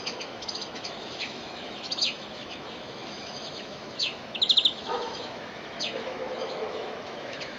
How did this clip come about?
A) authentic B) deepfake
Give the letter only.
B